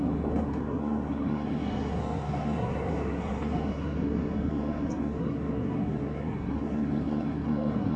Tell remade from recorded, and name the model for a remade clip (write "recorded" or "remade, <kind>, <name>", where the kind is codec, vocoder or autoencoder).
remade, codec, SNAC